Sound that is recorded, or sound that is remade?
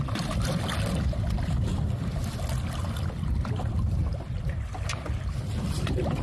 recorded